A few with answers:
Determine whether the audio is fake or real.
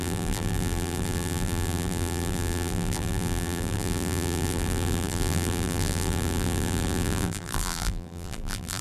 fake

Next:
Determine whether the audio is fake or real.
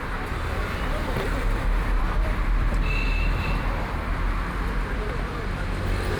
fake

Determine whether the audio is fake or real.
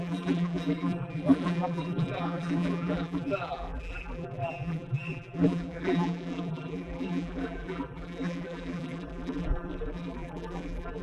fake